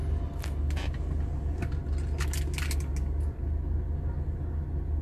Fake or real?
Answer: real